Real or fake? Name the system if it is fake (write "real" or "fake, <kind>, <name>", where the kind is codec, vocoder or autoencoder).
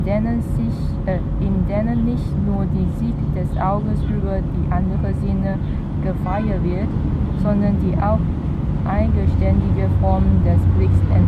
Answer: real